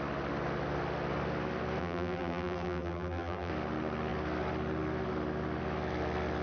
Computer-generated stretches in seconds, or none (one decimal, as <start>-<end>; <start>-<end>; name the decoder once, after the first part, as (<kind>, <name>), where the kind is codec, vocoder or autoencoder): 1.8-3.5 (vocoder, BigVGAN v2)

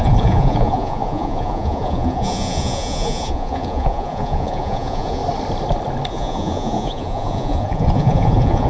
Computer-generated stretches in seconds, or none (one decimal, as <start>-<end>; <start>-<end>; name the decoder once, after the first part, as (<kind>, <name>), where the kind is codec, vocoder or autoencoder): 0.0-5.2 (vocoder, Vocos); 6.1-8.7

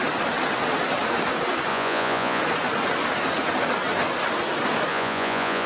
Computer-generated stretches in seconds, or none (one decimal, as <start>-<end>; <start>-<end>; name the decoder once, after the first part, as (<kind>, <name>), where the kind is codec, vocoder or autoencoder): 1.7-2.4 (vocoder, Vocos); 4.9-5.7

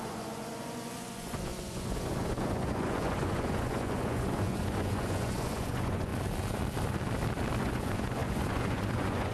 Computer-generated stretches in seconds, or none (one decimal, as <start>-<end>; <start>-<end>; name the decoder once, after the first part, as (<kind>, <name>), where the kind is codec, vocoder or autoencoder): 0.0-6.1 (vocoder, Vocos); 7.6-9.3

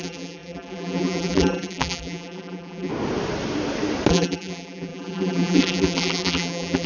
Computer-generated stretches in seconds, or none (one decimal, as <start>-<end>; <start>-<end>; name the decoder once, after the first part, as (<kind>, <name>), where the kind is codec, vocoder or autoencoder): 0.0-2.9 (vocoder, BigVGAN v2); 4.1-6.9

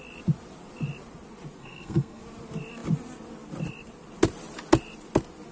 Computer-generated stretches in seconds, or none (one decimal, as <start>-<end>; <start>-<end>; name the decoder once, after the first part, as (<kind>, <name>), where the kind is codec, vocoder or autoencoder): 1.6-2.2 (codec, SNAC)

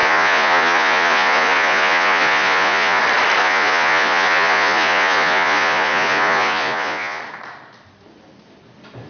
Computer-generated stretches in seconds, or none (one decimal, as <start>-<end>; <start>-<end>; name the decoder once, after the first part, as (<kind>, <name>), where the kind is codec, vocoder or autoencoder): 0.0-3.0 (vocoder, Vocos); 3.4-7.2